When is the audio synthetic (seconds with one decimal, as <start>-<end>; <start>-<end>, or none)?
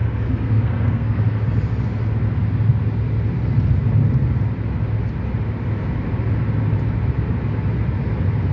0.0-1.2